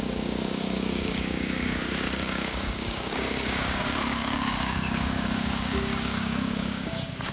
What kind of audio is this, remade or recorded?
remade